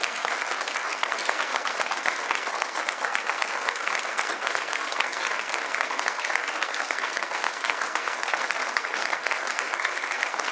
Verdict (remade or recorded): remade